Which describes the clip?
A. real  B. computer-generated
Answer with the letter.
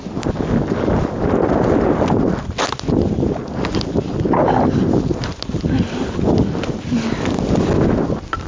A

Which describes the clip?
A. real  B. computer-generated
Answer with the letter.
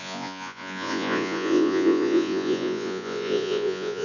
B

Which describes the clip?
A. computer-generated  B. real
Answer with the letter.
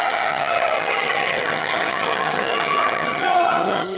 A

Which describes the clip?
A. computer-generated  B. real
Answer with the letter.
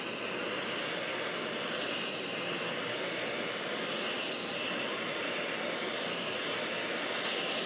B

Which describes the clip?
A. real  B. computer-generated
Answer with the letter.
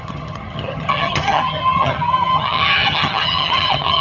B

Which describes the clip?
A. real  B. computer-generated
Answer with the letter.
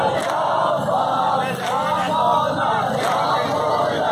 A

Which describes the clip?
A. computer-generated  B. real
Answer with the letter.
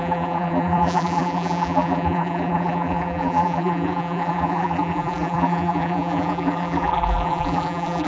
A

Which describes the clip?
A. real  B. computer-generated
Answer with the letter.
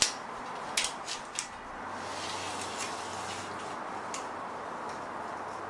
A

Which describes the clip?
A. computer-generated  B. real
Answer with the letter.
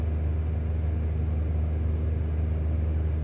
B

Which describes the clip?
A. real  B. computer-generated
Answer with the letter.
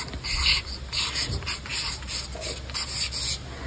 A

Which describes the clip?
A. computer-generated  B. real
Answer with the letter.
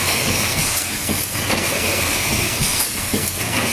A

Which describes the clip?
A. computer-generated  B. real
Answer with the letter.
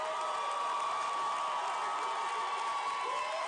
B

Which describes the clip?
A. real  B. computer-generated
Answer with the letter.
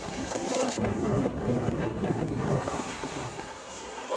B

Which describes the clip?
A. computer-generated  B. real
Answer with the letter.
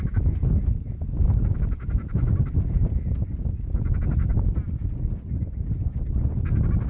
B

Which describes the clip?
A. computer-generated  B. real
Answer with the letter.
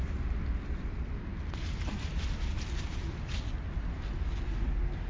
B